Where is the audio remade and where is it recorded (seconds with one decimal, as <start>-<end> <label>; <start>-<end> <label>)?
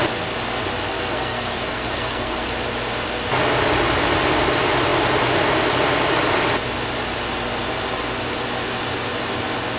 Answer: 0.0-0.9 recorded; 0.9-2.5 remade; 2.5-9.8 recorded